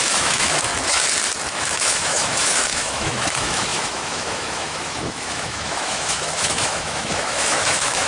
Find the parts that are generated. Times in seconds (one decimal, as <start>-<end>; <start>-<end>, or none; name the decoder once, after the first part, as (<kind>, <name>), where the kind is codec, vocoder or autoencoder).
0.0-0.7 (autoencoder, DAC-VAE); 1.5-8.1